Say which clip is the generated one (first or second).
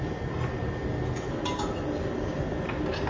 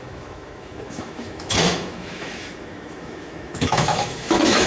second